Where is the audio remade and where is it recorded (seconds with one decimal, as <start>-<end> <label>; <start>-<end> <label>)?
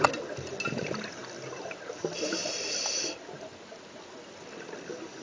0.0-5.2 recorded